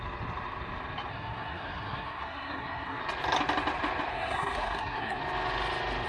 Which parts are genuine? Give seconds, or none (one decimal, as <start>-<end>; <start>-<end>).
0.0-1.1; 3.0-4.1; 5.2-6.1